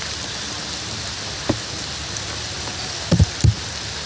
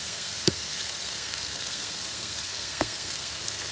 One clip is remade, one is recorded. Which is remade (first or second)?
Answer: second